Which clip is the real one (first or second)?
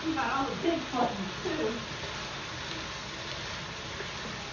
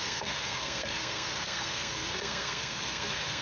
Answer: first